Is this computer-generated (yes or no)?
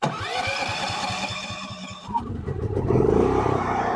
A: yes